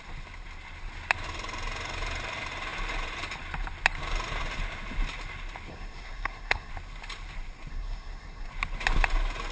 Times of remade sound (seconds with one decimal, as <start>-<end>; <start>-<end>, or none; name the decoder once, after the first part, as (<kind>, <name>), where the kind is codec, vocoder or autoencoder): 5.7-6.7 (codec, SNAC); 7.7-8.5